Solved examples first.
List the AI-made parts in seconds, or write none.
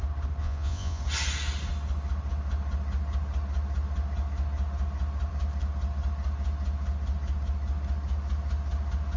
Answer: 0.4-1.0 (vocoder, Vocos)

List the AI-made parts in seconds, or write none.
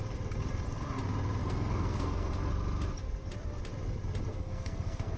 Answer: 1.4-2.5 (codec, SNAC); 4.3-5.2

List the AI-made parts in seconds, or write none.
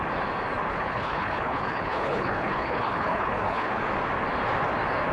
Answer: 0.7-3.8 (codec, HILCodec)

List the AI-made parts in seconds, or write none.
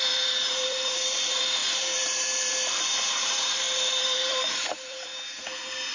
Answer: 0.0-5.1 (vocoder, BigVGAN v2)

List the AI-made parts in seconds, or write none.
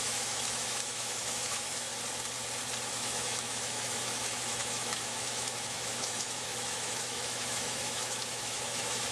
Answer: 0.0-1.9 (autoencoder, DAC-VAE); 2.9-9.1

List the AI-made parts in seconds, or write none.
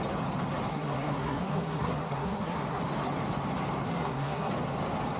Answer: 0.7-2.8 (codec, SNAC); 3.9-4.5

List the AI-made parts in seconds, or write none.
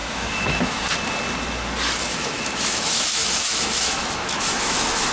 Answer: 0.0-0.8 (autoencoder, DAC-VAE); 2.1-5.1